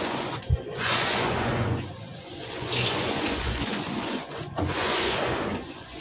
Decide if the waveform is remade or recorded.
remade